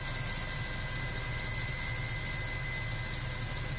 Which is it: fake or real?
real